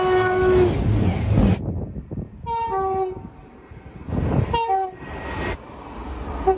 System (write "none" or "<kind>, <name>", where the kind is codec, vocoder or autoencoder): none